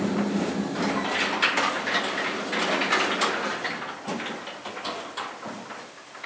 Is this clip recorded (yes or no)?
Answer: yes